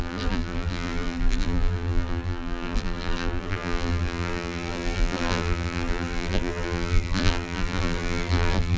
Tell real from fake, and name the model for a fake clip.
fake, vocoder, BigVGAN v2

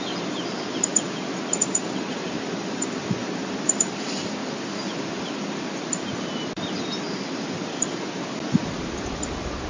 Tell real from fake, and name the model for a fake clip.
real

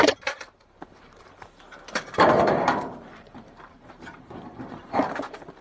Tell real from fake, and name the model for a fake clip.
fake, vocoder, BigVGAN v2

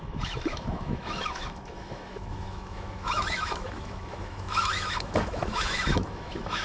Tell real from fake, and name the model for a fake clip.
fake, autoencoder, DAC-VAE